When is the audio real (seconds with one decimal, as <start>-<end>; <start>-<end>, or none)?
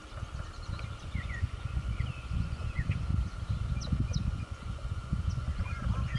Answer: 0.0-1.0; 3.1-3.7